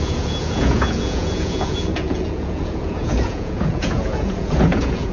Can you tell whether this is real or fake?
fake